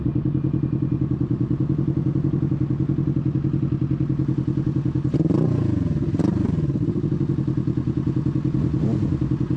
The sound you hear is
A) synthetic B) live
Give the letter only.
B